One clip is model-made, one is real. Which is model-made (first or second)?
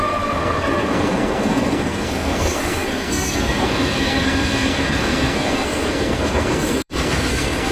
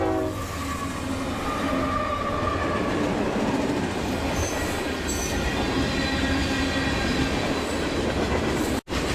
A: first